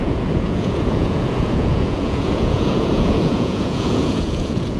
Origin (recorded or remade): remade